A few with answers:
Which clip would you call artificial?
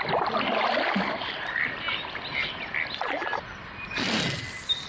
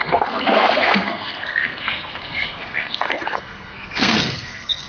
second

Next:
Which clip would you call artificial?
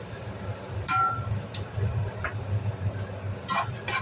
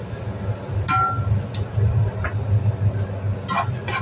first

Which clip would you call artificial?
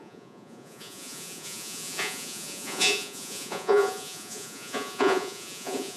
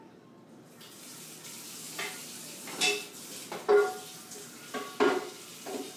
first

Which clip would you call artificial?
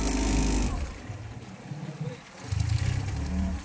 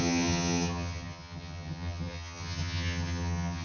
second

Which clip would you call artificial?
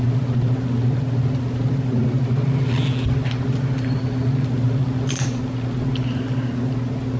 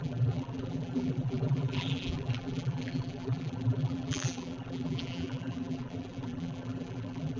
second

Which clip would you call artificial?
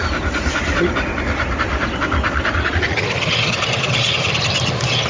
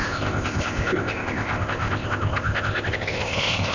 second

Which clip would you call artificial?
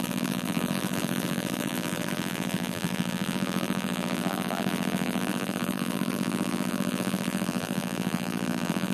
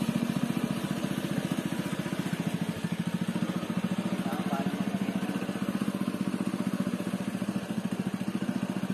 first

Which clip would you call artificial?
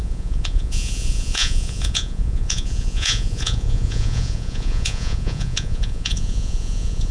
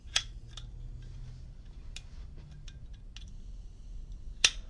first